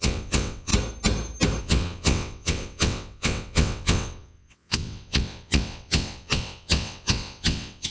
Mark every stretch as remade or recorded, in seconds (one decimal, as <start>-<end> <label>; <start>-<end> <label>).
0.0-0.7 remade; 0.7-1.6 recorded; 1.6-7.9 remade